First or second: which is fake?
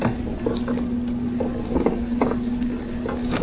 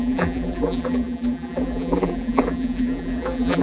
second